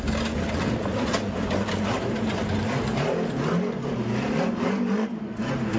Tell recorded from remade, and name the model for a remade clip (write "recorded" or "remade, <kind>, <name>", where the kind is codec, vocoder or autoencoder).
recorded